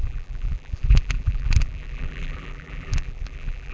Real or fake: fake